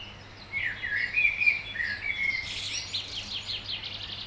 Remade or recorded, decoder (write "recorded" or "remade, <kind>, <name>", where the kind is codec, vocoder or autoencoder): recorded